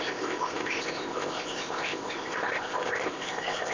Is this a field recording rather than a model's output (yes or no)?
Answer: no